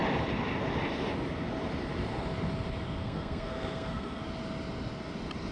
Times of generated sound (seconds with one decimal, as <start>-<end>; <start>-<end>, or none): 3.0-4.2

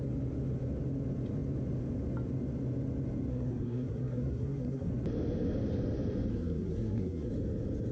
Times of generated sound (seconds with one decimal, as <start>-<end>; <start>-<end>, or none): 3.3-4.9; 6.3-7.3